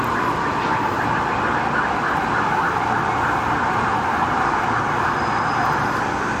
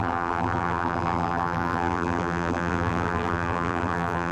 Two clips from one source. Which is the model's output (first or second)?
second